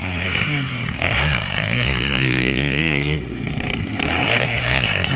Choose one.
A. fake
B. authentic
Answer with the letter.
A